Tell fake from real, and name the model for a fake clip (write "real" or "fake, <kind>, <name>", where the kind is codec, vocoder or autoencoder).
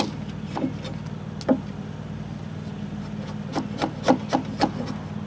real